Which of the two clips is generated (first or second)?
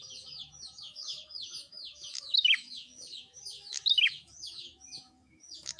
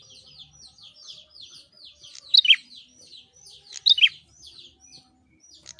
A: first